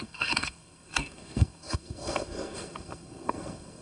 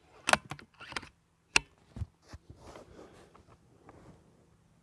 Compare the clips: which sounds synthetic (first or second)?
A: first